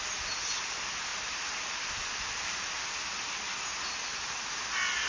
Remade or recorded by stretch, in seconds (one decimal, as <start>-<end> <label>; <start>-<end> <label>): 0.0-5.1 recorded